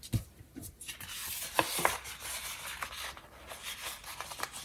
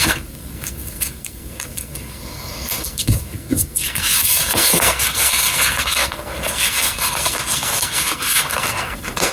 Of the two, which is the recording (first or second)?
first